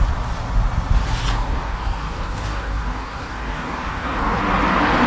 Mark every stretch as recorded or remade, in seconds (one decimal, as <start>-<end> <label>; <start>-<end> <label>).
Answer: 0.0-1.3 recorded; 1.3-4.4 remade; 4.4-5.1 recorded